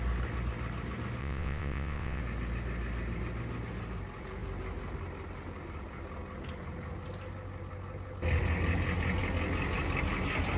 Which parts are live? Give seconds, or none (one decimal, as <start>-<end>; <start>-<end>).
0.0-1.2; 2.2-10.6